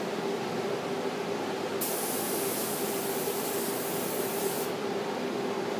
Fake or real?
real